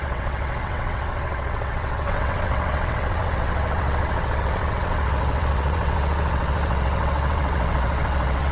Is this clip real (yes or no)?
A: no